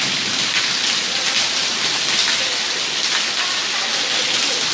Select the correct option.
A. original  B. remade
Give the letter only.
A